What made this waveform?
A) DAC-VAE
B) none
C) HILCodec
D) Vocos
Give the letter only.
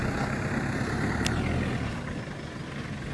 B